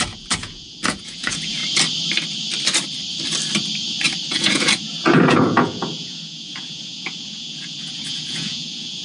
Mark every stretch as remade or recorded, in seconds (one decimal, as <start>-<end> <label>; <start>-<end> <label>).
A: 0.0-1.6 remade; 1.6-4.3 recorded; 4.3-9.0 remade